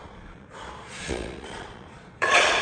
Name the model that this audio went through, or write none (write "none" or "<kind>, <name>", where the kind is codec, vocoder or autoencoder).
vocoder, Vocos